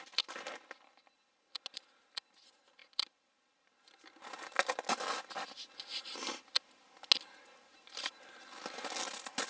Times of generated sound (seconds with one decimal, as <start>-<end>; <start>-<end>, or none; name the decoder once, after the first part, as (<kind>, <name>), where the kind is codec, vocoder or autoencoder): none